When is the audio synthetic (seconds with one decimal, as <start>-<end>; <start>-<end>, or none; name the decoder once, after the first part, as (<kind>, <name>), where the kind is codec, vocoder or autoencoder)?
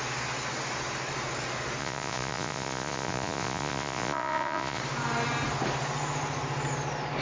1.8-4.8 (vocoder, Vocos)